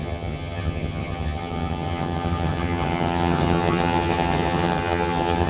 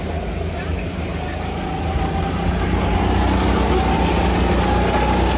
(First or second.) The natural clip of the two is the second